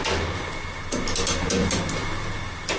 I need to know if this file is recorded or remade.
recorded